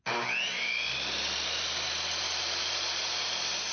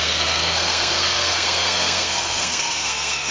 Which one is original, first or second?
first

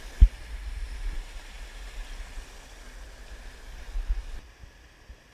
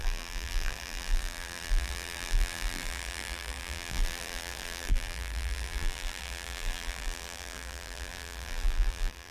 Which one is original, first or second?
first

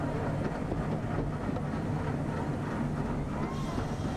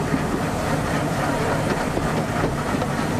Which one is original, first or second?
first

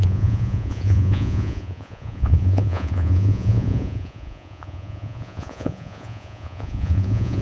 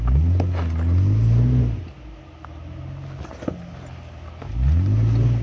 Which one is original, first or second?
second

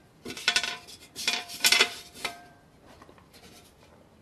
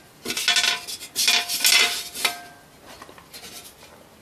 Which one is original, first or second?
second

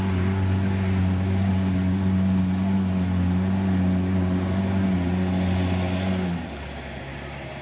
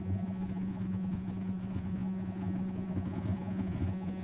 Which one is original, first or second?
first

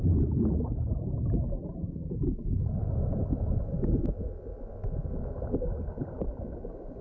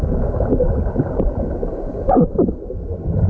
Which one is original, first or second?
first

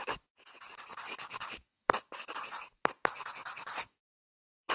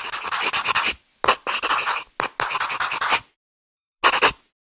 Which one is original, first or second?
second